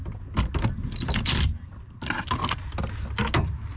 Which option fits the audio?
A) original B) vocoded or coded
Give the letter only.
A